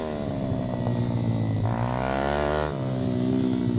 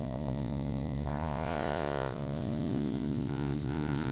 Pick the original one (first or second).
first